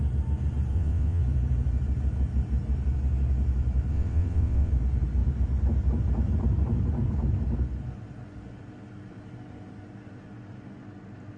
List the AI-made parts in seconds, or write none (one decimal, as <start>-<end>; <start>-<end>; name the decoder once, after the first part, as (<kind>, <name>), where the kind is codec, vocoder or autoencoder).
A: 0.7-1.2 (vocoder, WaveNeXt); 3.9-4.7